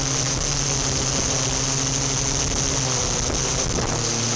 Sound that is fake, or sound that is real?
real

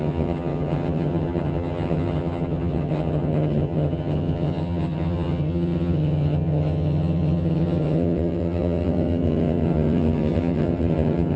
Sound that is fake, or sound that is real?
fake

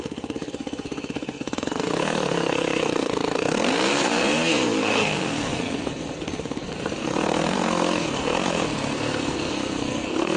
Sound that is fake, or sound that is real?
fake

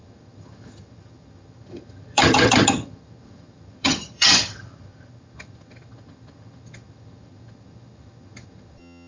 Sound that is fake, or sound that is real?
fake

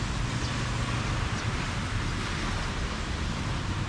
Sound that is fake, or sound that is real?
fake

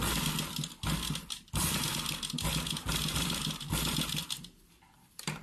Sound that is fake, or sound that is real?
real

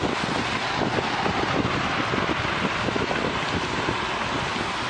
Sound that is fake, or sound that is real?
real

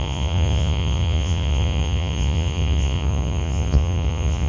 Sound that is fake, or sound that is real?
fake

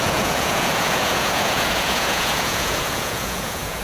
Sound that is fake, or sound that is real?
fake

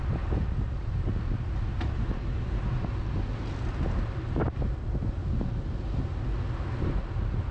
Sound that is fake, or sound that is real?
real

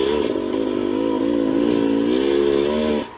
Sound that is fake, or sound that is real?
real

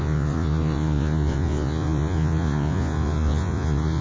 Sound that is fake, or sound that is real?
fake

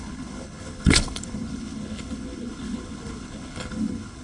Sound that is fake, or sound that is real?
fake